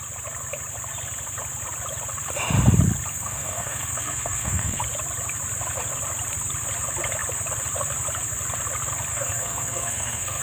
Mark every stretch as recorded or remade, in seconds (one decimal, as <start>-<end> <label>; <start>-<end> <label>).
0.0-3.1 recorded; 3.1-4.8 remade; 4.8-9.1 recorded; 9.1-10.4 remade